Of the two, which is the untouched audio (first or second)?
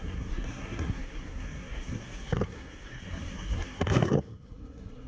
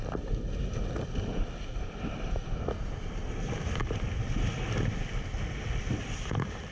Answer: second